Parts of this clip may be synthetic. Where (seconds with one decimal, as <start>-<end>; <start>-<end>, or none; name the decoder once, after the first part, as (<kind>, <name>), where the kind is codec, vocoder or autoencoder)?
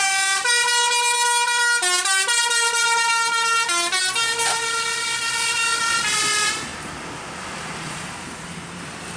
0.0-0.8 (vocoder, BigVGAN v2); 4.0-6.7; 7.9-9.2